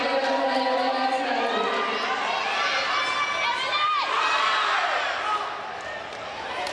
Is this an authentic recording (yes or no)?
yes